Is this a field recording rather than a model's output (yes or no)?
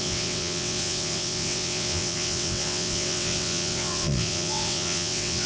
no